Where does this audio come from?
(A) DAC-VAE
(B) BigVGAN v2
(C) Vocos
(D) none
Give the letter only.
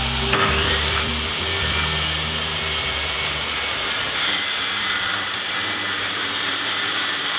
B